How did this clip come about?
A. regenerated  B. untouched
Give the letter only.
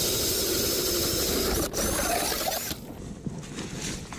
B